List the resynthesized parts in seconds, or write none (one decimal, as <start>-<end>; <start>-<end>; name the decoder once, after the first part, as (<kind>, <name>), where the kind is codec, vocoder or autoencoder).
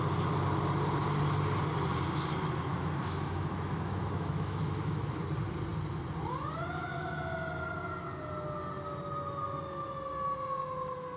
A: 2.7-5.2 (autoencoder, DAC-VAE)